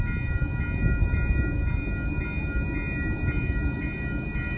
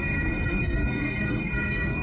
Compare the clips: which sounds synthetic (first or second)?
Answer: second